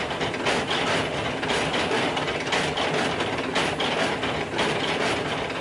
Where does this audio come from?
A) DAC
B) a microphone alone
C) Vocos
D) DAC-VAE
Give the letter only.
B